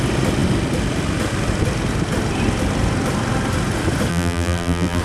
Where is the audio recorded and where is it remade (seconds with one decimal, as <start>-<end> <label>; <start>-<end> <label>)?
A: 0.0-4.1 recorded; 4.1-5.0 remade